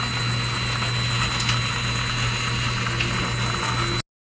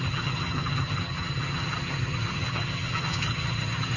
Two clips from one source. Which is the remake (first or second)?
second